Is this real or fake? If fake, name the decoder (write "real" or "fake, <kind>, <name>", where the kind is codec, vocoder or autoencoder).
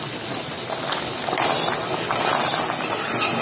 real